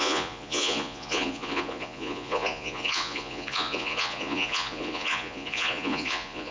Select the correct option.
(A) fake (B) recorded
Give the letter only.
A